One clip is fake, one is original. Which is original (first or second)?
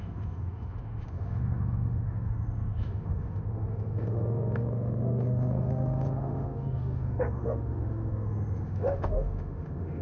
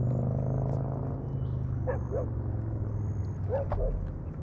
second